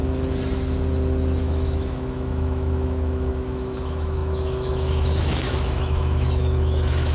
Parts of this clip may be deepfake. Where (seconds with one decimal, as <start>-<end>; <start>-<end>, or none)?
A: 1.4-7.1